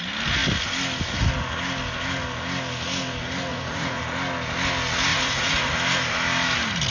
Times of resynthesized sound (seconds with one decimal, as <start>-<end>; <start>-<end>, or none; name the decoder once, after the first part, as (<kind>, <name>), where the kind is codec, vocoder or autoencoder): 3.5-4.0 (vocoder, Vocos); 5.1-5.7